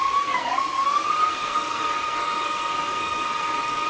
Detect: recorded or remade remade